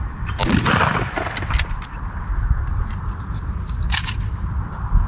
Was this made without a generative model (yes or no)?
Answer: yes